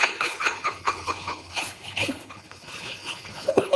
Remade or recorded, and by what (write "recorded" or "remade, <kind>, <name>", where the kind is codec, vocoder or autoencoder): remade, codec, HILCodec